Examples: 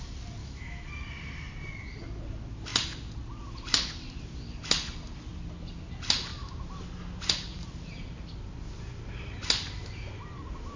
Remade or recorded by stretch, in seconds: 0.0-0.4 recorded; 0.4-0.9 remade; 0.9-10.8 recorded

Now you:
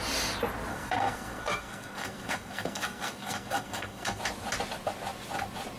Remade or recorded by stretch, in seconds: 0.0-0.7 recorded; 0.7-4.2 remade; 4.2-5.8 recorded